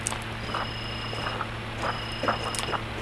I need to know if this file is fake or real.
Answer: real